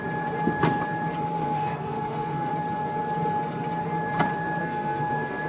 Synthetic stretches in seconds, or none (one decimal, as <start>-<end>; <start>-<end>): 1.4-2.5; 4.6-5.5